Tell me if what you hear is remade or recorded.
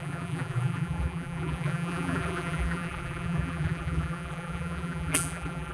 remade